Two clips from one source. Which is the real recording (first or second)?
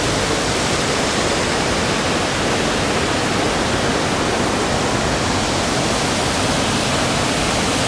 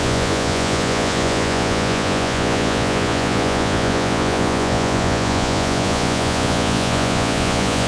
first